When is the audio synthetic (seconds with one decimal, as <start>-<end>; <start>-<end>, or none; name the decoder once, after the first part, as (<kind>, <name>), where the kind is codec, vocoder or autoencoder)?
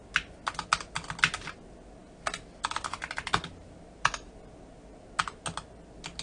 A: none